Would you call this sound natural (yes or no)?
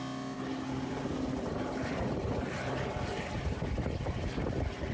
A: yes